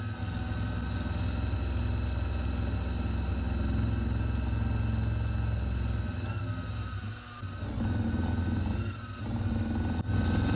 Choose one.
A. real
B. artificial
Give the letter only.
A